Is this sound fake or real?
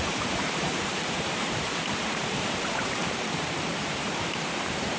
fake